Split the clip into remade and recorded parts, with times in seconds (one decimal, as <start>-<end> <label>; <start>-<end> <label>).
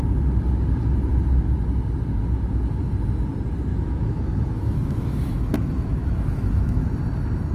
0.0-3.7 recorded; 3.7-6.9 remade; 6.9-7.5 recorded